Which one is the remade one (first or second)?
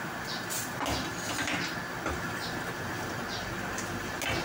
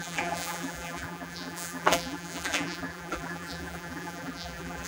second